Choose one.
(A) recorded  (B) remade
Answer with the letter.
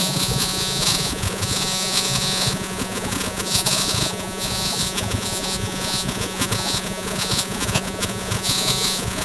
B